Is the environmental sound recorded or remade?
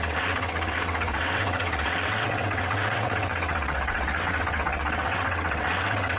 remade